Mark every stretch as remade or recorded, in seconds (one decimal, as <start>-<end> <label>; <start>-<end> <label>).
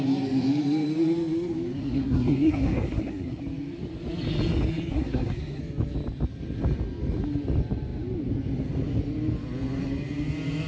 0.0-1.8 recorded; 1.8-3.4 remade; 3.4-4.9 recorded; 4.9-5.6 remade; 5.6-10.7 recorded